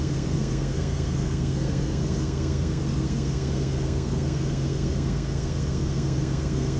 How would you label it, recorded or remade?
remade